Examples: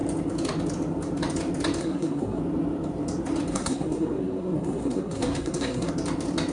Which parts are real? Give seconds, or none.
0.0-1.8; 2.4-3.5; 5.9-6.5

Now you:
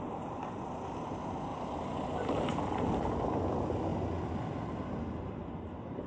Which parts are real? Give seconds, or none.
0.0-6.1

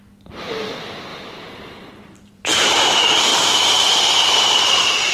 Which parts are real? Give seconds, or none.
0.0-1.1; 2.8-3.3

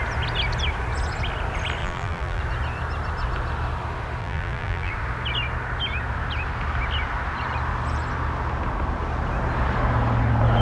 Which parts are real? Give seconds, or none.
0.0-1.8; 2.4-4.2; 4.9-10.6

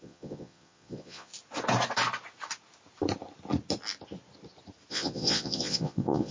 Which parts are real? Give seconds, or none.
1.3-4.9

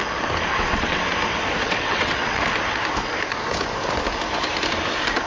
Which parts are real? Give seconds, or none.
0.0-0.5; 1.0-1.6; 2.4-5.3

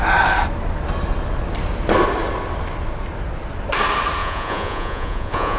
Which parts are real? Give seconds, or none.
0.0-4.2